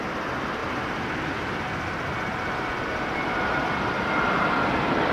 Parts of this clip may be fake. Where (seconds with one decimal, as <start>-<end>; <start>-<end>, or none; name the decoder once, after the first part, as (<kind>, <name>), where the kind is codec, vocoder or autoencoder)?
none